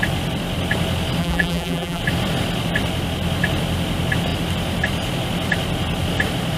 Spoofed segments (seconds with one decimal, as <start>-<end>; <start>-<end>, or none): 1.2-2.0